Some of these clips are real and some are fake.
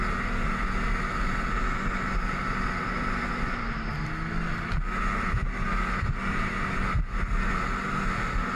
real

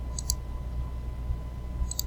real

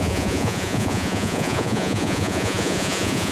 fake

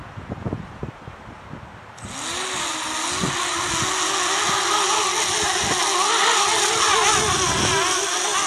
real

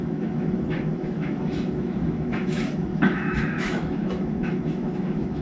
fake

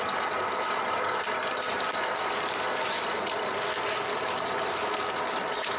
real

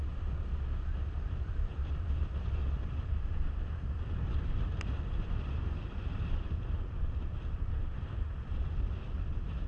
fake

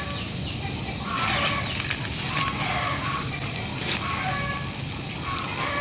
real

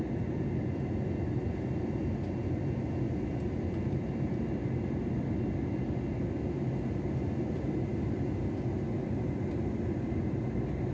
real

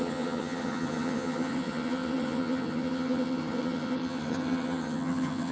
fake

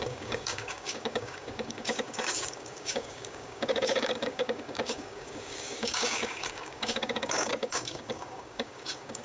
fake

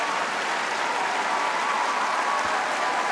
real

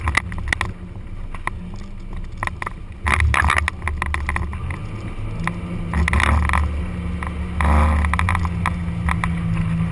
real